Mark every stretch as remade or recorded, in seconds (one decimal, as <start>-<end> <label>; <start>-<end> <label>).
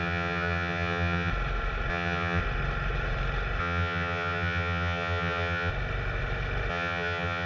0.0-1.3 remade; 1.3-1.9 recorded; 1.9-2.4 remade; 2.4-3.6 recorded; 3.6-5.7 remade; 5.7-6.7 recorded; 6.7-7.5 remade